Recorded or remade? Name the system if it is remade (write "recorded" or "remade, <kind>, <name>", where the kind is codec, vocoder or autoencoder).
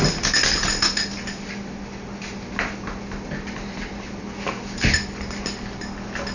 recorded